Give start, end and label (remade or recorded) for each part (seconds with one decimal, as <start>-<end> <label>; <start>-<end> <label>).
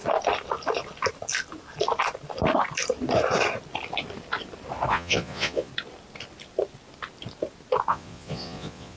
0.0-4.9 recorded; 4.9-5.7 remade; 5.7-7.9 recorded; 7.9-9.0 remade